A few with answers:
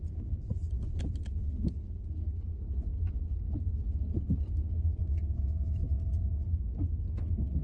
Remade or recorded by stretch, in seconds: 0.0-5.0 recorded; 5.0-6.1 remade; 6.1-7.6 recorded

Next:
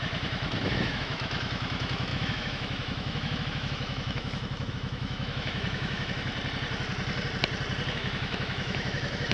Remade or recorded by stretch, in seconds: 0.0-6.3 remade; 6.3-7.9 recorded; 7.9-9.3 remade

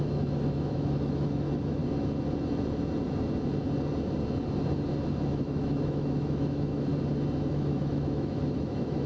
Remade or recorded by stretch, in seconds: 0.0-1.8 remade; 1.8-5.3 recorded; 5.3-6.9 remade; 6.9-7.5 recorded; 7.5-9.1 remade

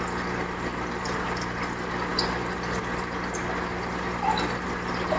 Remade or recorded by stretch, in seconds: 0.0-5.2 recorded

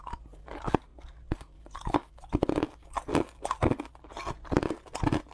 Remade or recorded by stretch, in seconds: 0.0-5.3 recorded

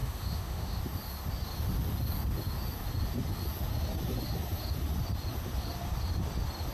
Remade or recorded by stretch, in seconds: 0.0-0.8 remade; 0.8-6.7 recorded

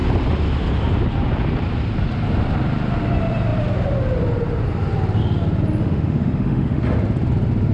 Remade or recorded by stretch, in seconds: 0.0-5.8 recorded; 5.8-6.8 remade; 6.8-7.7 recorded